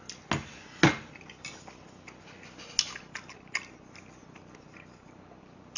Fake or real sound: real